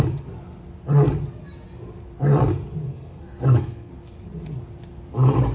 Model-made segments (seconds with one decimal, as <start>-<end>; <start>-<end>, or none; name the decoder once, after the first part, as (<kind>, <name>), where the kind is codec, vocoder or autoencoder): 2.9-3.9 (codec, SNAC)